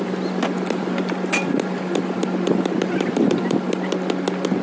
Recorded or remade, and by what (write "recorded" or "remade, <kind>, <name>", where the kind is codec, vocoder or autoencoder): recorded